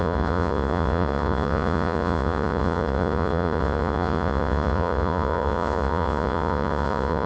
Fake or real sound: fake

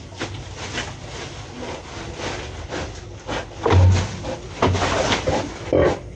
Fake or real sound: real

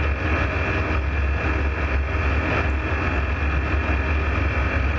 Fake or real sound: real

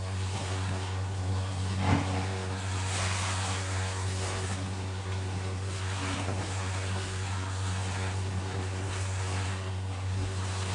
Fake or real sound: fake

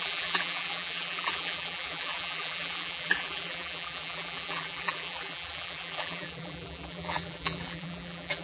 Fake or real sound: fake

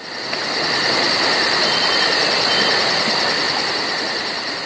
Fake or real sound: real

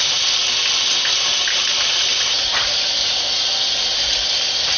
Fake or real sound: real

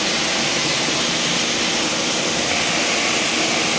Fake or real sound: real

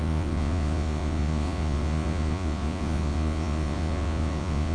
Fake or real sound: fake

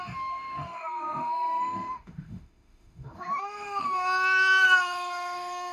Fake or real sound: fake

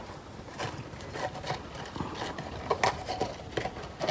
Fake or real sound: real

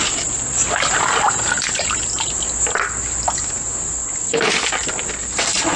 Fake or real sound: real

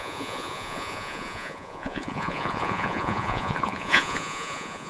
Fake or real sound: fake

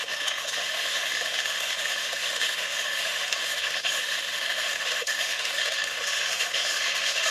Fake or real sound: fake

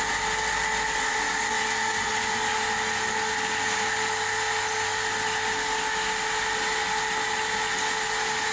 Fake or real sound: real